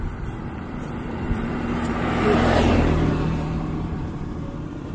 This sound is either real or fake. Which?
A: fake